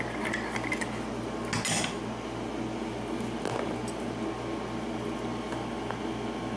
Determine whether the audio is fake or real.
real